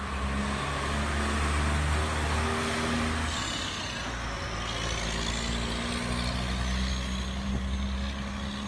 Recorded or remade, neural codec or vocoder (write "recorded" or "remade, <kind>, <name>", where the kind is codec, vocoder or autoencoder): recorded